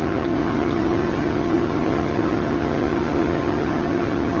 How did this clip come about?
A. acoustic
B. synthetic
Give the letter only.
B